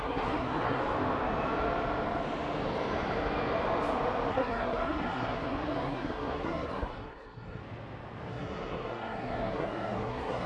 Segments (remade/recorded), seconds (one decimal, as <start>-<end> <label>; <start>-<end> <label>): 0.0-0.8 remade; 0.8-4.3 recorded; 4.3-7.6 remade; 7.6-8.3 recorded; 8.3-10.5 remade